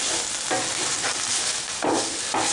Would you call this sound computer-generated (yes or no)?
no